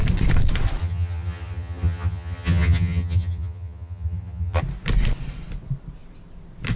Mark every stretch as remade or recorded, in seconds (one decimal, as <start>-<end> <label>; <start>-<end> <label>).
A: 0.0-0.8 recorded; 0.8-4.6 remade; 4.6-6.8 recorded